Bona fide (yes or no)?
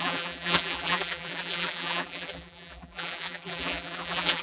no